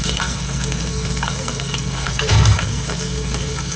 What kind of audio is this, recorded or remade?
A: remade